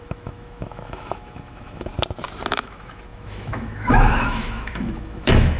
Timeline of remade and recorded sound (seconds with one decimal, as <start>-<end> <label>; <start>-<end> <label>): 0.0-1.9 remade; 1.9-2.5 recorded; 2.5-5.6 remade